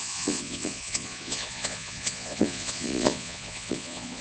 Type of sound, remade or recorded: remade